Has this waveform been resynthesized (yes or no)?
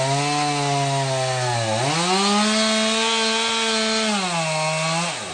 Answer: no